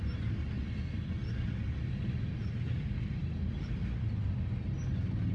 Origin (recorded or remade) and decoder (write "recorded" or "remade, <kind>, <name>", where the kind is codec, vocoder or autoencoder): recorded